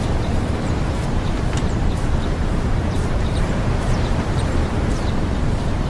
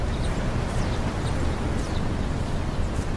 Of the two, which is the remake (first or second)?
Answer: first